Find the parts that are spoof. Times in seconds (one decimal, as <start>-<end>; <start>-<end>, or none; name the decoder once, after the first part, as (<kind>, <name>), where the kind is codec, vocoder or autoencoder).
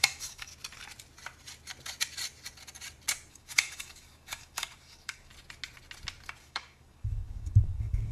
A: 0.0-0.5 (codec, DAC); 3.3-5.3; 6.4-8.1